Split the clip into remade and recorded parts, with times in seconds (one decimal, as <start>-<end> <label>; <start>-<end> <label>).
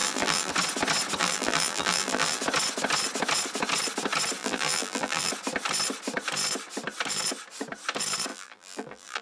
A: 0.0-0.5 remade; 0.5-1.2 recorded; 1.2-2.4 remade; 2.4-4.4 recorded; 4.4-5.3 remade; 5.3-8.3 recorded; 8.3-9.2 remade